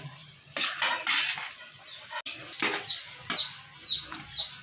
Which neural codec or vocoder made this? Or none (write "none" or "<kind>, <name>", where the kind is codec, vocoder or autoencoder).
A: none